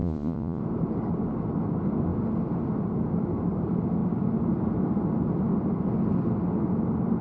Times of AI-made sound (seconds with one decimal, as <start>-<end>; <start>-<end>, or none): 0.0-0.6